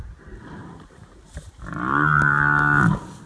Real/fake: real